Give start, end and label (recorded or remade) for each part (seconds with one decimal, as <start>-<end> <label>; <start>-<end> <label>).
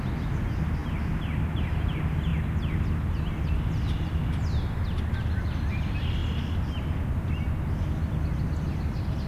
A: 0.0-9.3 recorded